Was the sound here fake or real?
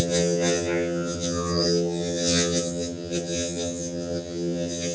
fake